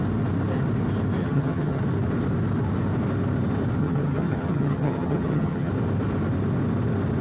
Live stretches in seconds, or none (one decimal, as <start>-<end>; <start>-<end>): 0.0-1.2; 1.8-3.8; 5.7-7.2

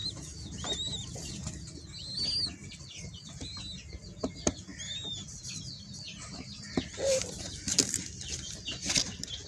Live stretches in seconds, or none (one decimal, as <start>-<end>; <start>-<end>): 0.0-9.5

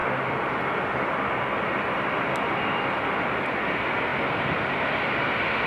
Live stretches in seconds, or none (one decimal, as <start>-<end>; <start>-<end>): 0.0-5.7

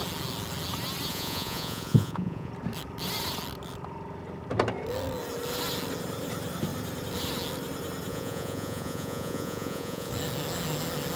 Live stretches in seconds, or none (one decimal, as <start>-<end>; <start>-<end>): 0.0-1.1; 2.5-8.1; 10.1-11.2

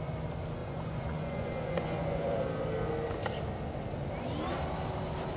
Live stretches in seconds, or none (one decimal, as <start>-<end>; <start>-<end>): 0.0-0.6; 2.4-5.4